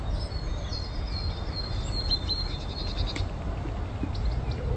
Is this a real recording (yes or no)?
yes